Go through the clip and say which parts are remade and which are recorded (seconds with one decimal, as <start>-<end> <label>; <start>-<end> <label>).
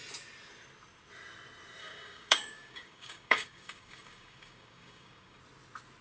0.0-1.8 recorded; 1.8-5.4 remade; 5.4-6.0 recorded